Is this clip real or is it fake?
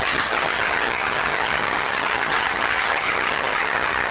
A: fake